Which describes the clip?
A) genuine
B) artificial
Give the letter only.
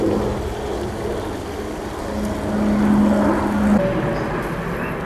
A